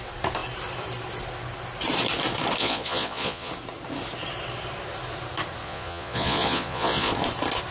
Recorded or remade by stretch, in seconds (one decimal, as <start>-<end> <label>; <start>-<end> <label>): 0.0-2.6 recorded; 2.6-3.5 remade; 3.5-5.6 recorded; 5.6-7.1 remade; 7.1-7.7 recorded